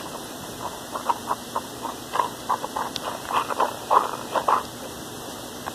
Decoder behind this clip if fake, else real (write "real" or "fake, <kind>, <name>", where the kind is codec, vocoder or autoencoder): real